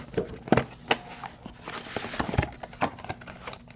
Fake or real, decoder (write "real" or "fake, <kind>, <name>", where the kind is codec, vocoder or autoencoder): real